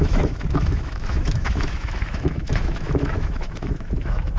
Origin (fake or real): fake